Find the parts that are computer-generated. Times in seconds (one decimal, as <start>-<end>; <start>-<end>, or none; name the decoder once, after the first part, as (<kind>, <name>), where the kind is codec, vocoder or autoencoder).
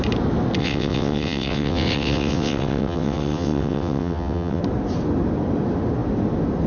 0.6-4.6 (vocoder, WaveNeXt)